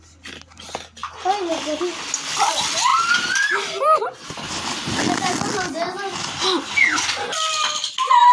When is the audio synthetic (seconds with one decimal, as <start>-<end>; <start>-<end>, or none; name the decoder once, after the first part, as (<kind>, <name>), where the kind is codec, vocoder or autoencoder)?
none